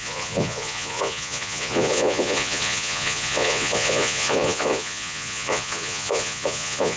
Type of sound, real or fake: fake